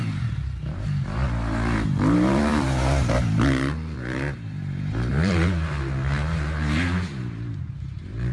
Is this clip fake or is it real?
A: fake